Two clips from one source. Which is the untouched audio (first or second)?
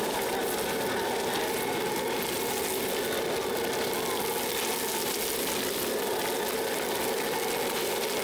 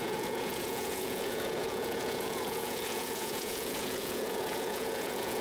first